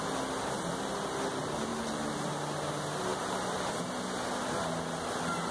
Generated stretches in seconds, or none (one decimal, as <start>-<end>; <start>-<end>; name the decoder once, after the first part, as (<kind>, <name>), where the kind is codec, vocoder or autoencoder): 1.7-2.3 (vocoder, BigVGAN v2); 3.1-3.7